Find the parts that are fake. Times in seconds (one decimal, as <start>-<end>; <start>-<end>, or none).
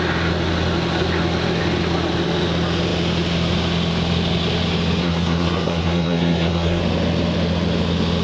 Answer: 5.0-6.8